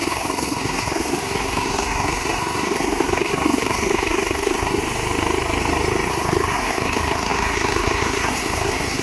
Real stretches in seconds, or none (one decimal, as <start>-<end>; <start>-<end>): 4.8-6.1